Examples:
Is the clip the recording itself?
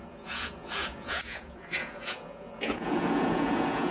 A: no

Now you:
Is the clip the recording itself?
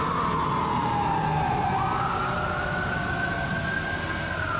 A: yes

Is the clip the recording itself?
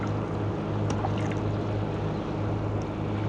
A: yes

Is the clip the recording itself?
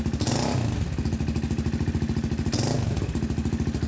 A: yes